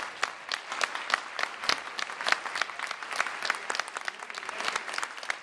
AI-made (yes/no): no